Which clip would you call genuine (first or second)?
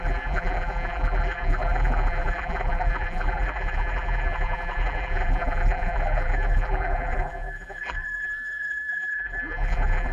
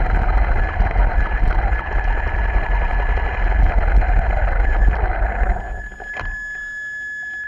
second